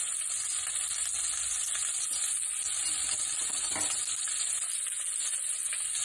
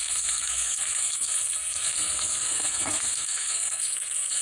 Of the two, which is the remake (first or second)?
second